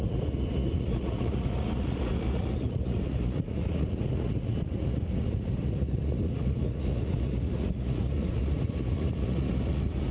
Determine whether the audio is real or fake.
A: fake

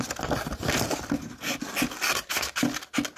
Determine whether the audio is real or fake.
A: real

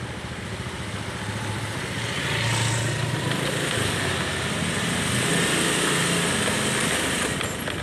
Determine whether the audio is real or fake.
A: real